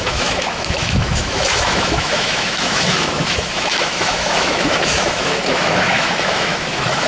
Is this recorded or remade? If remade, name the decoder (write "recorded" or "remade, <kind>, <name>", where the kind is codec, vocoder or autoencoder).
remade, autoencoder, DAC-VAE